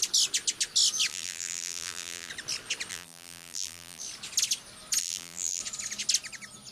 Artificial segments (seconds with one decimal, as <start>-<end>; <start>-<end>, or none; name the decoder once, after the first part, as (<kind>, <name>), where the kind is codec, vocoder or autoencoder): 1.1-2.3 (vocoder, BigVGAN v2); 2.9-4.0; 5.0-5.6

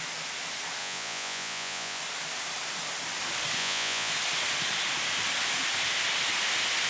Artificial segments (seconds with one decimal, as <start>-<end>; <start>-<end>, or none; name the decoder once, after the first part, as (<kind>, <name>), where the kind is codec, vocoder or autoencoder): 0.8-2.0 (vocoder, Vocos); 3.6-4.1

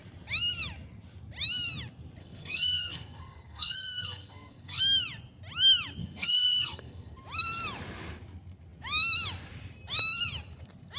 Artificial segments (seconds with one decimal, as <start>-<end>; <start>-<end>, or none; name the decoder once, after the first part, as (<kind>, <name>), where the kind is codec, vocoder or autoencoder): 2.2-4.8 (codec, SNAC); 6.0-7.2